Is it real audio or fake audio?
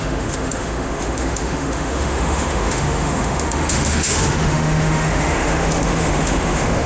fake